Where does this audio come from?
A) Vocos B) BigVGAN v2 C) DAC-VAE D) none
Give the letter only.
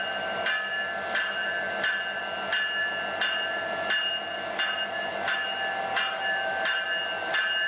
D